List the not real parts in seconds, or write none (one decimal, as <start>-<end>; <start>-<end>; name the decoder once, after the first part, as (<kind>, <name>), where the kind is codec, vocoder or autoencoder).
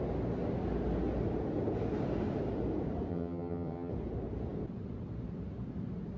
3.1-3.9 (vocoder, HiFi-GAN)